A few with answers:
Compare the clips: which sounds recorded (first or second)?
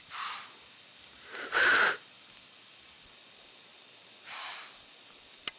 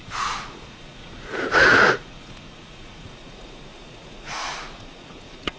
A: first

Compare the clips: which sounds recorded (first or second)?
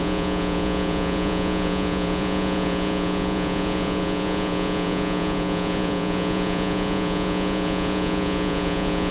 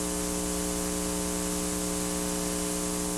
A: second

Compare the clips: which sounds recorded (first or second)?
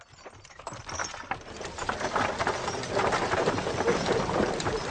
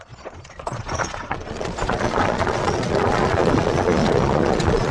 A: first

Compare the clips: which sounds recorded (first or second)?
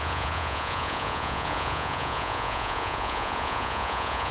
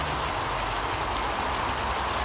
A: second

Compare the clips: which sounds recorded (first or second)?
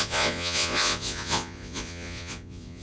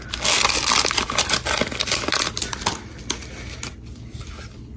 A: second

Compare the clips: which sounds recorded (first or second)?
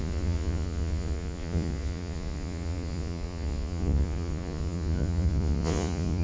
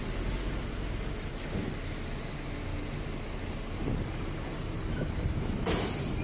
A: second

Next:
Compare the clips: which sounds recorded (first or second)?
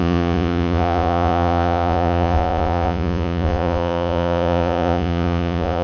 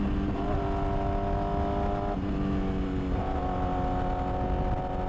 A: second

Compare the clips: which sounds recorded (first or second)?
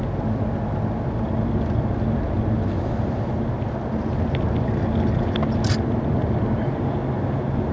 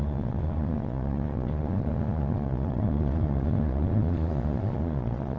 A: first